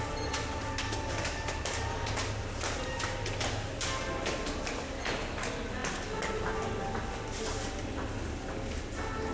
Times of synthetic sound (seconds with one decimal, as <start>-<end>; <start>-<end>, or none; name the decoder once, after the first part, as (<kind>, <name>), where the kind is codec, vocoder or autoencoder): none